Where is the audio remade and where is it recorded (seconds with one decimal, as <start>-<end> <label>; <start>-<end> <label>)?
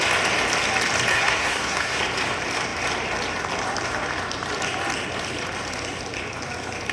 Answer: 0.0-1.1 recorded; 1.1-2.0 remade; 2.0-6.9 recorded